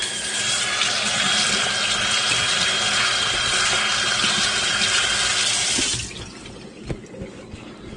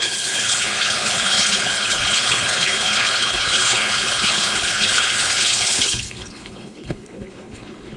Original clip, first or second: first